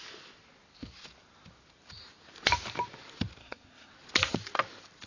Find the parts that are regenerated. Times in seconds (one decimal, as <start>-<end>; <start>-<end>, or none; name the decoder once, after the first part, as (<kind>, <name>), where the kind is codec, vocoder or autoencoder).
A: 3.4-3.9 (codec, SNAC)